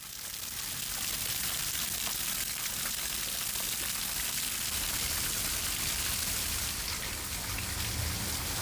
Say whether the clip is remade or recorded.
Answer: recorded